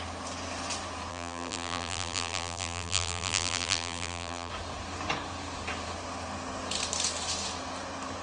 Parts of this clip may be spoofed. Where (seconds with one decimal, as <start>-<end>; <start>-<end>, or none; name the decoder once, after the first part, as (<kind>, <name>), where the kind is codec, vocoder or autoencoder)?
1.1-4.5 (vocoder, BigVGAN v2)